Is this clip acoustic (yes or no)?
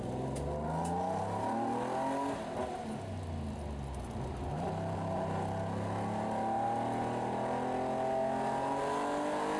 yes